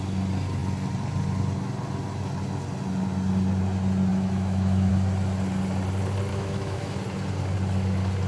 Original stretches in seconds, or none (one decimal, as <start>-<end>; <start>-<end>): 0.0-4.1; 4.9-6.3; 6.9-8.3